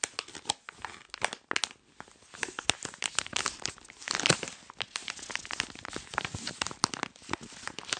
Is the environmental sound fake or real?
real